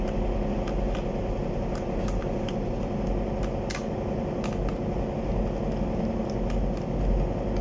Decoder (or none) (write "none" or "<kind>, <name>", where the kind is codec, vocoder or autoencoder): none